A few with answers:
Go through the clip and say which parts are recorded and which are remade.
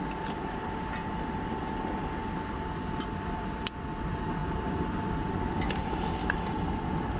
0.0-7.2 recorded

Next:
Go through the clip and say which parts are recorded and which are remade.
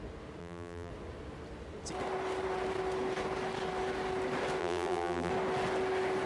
0.0-0.4 recorded; 0.4-0.9 remade; 0.9-4.6 recorded; 4.6-5.3 remade; 5.3-6.3 recorded